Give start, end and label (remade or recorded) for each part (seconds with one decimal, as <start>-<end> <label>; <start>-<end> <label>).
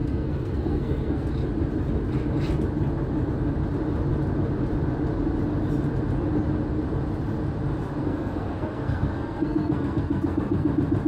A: 0.0-1.3 remade; 1.3-8.0 recorded; 8.0-10.7 remade; 10.7-11.1 recorded